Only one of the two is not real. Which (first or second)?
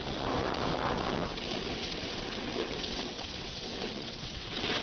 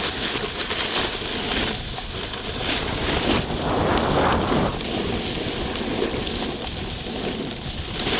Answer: first